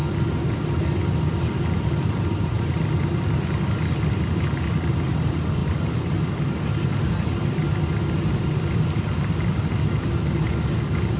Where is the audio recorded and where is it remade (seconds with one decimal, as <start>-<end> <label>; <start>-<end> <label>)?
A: 0.0-11.2 recorded